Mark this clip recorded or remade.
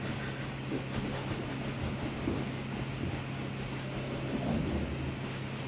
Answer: recorded